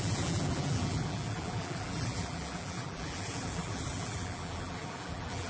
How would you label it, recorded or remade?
remade